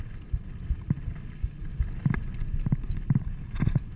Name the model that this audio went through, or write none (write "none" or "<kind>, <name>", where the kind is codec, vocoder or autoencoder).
none